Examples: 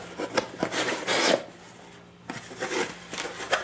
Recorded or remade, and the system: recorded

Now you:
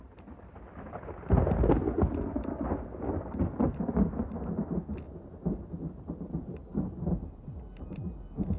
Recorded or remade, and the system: recorded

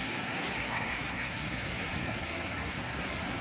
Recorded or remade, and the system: remade, codec, SNAC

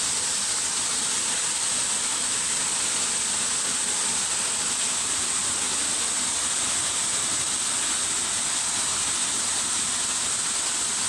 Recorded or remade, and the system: recorded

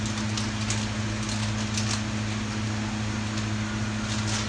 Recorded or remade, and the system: recorded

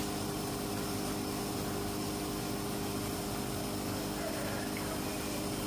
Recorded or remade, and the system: recorded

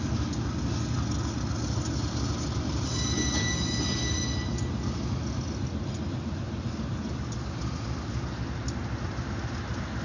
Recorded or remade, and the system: recorded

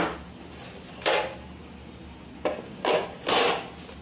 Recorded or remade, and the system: recorded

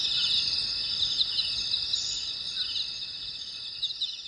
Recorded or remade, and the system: recorded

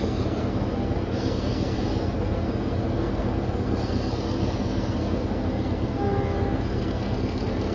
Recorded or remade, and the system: remade, codec, SNAC